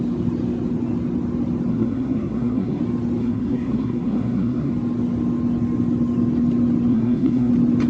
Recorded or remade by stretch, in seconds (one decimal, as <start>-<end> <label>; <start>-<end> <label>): 0.0-1.7 recorded; 1.7-2.8 remade; 2.8-3.2 recorded; 3.2-4.7 remade; 4.7-6.9 recorded; 6.9-7.5 remade; 7.5-7.9 recorded